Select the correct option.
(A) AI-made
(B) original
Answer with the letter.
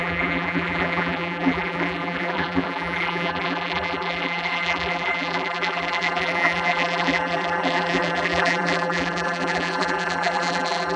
A